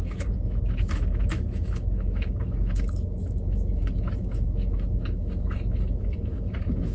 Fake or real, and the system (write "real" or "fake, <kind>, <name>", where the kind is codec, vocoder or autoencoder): fake, autoencoder, DAC-VAE